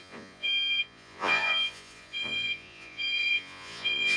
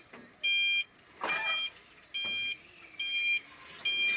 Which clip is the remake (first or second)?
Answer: first